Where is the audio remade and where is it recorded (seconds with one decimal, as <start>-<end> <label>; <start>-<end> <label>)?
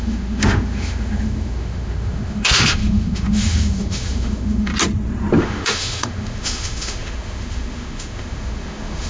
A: 0.0-4.7 remade; 4.7-5.4 recorded; 5.4-9.1 remade